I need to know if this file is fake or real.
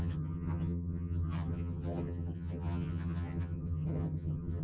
fake